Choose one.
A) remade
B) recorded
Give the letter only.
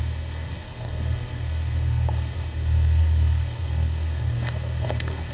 A